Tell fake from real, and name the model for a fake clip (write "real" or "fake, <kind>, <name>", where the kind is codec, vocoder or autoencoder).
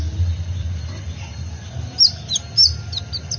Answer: real